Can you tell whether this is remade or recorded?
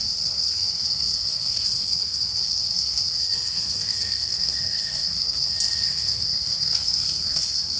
remade